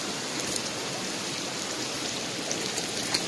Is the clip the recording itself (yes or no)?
yes